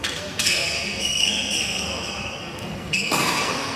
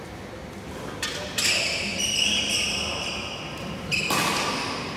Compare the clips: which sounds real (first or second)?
second